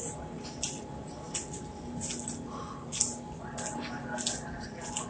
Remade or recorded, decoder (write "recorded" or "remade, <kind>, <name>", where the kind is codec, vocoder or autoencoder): recorded